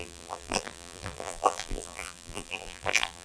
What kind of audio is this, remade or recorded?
remade